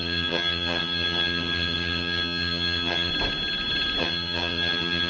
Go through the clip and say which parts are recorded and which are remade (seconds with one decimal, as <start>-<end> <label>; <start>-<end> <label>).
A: 0.0-3.1 remade; 3.1-4.0 recorded; 4.0-5.1 remade